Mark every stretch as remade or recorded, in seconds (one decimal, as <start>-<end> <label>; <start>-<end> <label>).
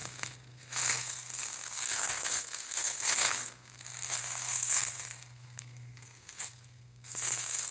0.0-7.7 remade